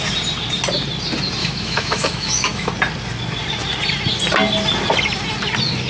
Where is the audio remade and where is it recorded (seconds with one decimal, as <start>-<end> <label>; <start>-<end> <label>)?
0.0-1.4 recorded; 1.4-2.7 remade; 2.7-5.9 recorded